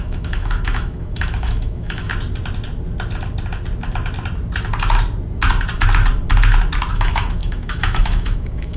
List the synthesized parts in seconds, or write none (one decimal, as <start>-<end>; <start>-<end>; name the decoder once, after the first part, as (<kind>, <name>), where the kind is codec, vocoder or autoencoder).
0.0-2.1 (autoencoder, DAC-VAE); 6.9-8.8